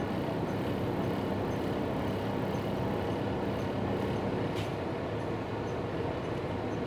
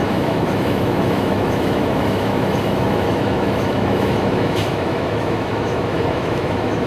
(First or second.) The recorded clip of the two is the first